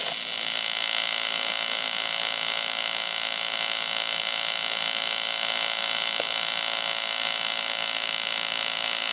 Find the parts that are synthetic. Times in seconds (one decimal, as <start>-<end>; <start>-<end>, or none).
none